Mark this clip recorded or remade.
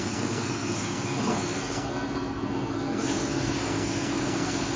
remade